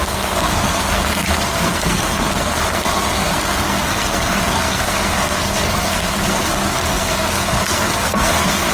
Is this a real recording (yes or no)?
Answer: no